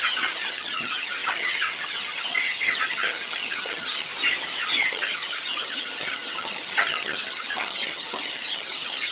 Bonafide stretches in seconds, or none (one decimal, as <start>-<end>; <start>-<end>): 4.1-4.6